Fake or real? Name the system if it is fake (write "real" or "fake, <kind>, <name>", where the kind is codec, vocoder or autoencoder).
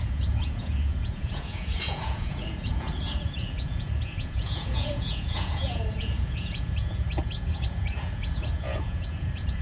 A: fake, vocoder, Vocos